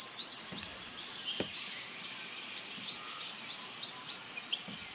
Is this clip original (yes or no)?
yes